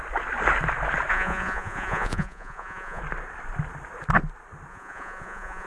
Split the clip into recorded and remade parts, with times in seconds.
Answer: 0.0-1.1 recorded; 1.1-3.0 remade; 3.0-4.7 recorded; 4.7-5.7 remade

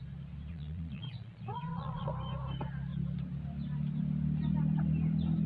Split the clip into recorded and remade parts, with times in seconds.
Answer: 0.0-0.5 recorded; 0.5-2.1 remade; 2.1-5.5 recorded

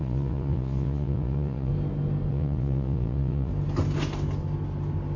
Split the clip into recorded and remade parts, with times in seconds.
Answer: 0.0-1.7 remade; 1.7-2.3 recorded; 2.3-3.5 remade; 3.5-5.2 recorded